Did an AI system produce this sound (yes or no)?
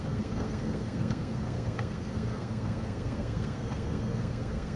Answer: yes